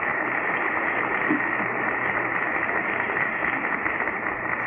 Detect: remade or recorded recorded